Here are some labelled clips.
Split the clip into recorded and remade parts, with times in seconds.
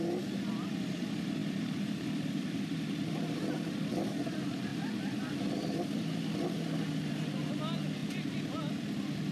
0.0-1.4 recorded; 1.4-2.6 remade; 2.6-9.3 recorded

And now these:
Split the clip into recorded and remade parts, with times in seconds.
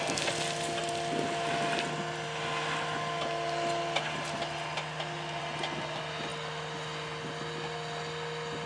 0.0-8.7 recorded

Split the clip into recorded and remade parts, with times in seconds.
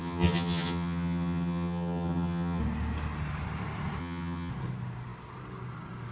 0.0-2.6 remade; 2.6-4.0 recorded; 4.0-4.5 remade; 4.5-6.1 recorded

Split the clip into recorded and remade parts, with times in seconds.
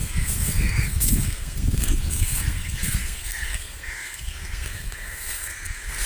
0.0-6.1 remade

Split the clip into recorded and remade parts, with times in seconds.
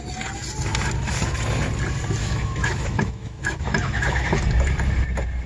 0.0-2.2 recorded; 2.2-4.4 remade; 4.4-5.5 recorded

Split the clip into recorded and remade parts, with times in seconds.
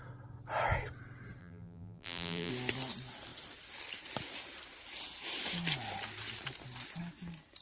0.0-1.4 recorded; 1.4-2.5 remade; 2.5-7.6 recorded